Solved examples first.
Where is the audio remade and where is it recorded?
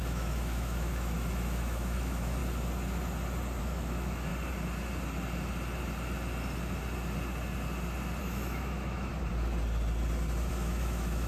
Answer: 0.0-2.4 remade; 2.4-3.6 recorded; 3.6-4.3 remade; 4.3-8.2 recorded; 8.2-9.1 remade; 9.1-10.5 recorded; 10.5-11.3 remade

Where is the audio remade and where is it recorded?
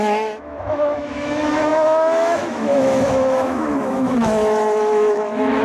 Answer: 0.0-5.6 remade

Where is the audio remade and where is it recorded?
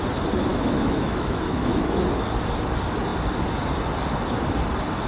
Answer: 0.0-0.5 recorded; 0.5-2.0 remade; 2.0-5.1 recorded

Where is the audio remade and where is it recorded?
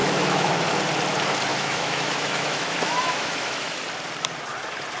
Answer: 0.0-0.5 remade; 0.5-1.5 recorded; 1.5-3.8 remade; 3.8-5.0 recorded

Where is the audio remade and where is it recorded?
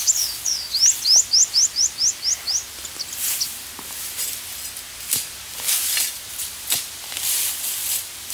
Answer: 0.0-8.3 recorded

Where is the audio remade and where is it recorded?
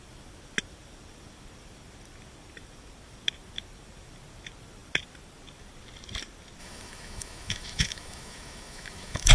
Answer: 0.0-6.6 recorded; 6.6-9.3 remade